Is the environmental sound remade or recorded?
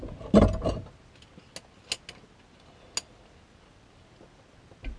recorded